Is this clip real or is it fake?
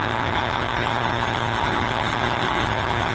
fake